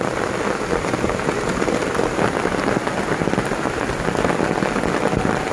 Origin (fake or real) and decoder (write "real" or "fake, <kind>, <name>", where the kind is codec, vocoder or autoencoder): real